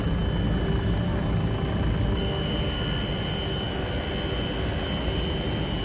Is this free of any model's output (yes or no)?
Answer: yes